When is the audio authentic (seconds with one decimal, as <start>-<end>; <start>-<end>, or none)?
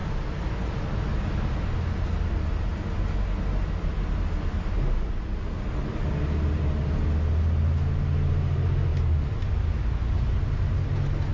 0.0-11.3